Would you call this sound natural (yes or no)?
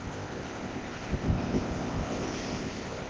no